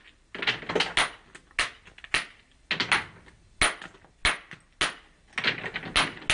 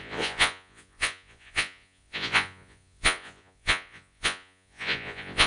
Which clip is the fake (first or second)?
second